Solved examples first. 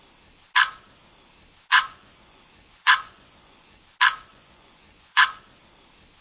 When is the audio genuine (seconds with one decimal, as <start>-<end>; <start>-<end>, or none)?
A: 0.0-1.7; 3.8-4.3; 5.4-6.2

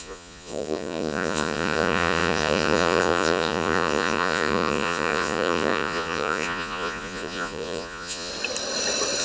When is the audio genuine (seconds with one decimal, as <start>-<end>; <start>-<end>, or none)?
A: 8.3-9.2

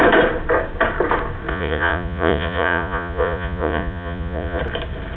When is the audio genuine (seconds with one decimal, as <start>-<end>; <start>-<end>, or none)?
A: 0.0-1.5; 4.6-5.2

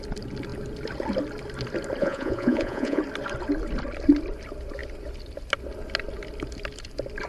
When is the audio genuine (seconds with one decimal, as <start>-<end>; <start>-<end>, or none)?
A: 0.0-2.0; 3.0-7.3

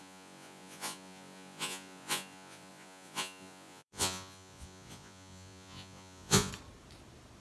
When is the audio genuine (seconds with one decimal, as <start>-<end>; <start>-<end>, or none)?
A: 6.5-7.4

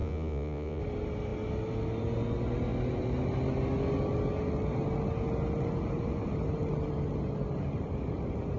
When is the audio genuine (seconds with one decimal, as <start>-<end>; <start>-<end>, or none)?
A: 0.8-8.6